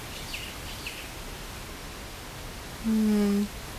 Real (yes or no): yes